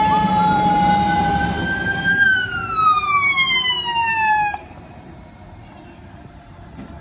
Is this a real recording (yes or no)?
no